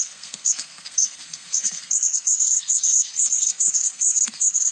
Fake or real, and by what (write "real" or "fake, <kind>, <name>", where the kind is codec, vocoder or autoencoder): fake, codec, SNAC